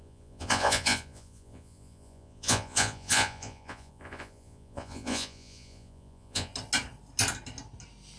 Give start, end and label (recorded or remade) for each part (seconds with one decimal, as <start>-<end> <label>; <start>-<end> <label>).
0.0-6.5 remade; 6.5-8.2 recorded